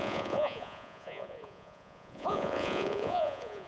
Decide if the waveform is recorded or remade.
remade